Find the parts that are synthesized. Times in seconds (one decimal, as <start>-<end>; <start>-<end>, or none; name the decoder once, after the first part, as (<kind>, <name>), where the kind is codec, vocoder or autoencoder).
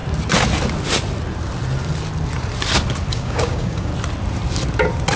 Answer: 3.1-3.9 (codec, DAC)